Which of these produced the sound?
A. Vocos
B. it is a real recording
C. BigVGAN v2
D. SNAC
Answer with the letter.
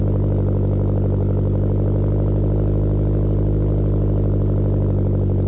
B